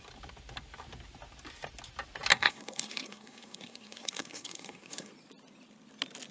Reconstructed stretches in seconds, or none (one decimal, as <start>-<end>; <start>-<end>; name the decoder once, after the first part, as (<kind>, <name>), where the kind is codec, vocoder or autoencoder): 2.3-5.1 (codec, SNAC)